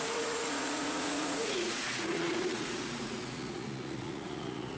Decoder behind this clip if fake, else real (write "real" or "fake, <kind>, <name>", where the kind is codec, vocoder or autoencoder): fake, vocoder, Vocos